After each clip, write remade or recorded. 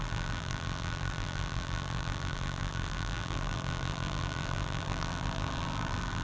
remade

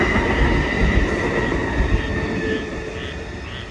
recorded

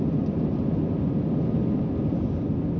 recorded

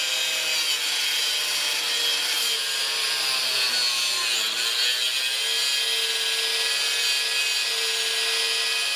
recorded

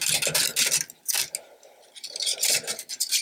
recorded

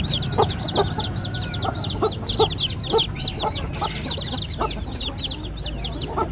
recorded